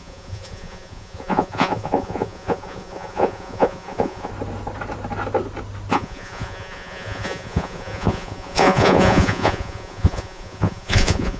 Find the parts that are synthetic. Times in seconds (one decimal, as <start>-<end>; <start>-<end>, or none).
0.0-4.3; 5.9-11.4